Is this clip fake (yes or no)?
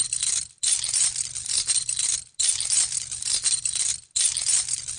no